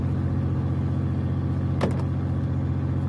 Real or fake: real